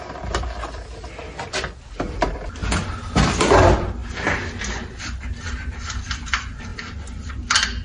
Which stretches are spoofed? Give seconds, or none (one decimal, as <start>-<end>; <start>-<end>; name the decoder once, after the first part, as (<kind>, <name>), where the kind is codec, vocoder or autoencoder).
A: 0.0-2.6 (vocoder, BigVGAN v2); 3.1-4.0; 4.9-7.8